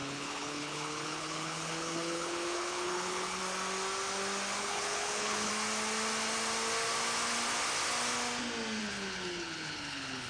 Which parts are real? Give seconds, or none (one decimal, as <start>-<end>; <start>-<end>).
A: 3.4-4.6; 5.5-8.8